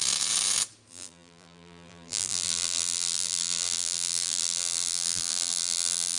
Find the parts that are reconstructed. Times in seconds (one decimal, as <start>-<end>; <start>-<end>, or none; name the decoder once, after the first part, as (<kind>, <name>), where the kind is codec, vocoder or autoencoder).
0.9-6.2 (vocoder, BigVGAN v2)